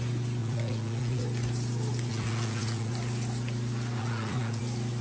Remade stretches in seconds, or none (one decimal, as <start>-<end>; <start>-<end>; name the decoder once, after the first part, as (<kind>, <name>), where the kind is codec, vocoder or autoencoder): 0.4-1.2 (vocoder, Vocos); 2.1-2.9; 4.0-4.6